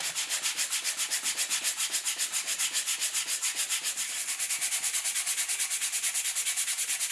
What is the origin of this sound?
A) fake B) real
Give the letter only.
B